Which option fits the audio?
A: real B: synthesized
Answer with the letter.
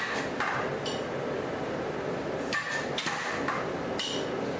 A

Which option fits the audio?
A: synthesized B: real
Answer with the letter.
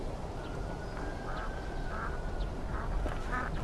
B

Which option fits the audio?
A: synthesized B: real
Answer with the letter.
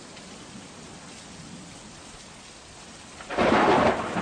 B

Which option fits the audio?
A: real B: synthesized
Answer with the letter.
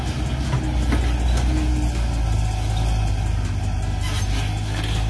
A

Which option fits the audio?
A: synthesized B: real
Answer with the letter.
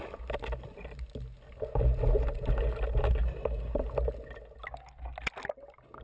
B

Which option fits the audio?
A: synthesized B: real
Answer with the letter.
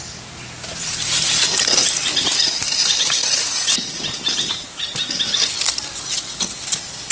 B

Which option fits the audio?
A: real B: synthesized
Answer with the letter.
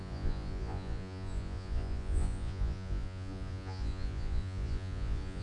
B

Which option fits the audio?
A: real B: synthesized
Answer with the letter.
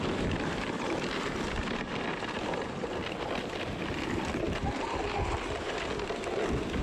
A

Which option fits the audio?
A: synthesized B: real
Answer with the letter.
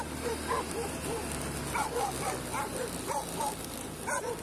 B